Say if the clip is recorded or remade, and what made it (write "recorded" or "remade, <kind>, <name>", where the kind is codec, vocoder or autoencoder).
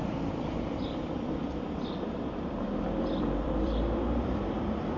remade, vocoder, BigVGAN v2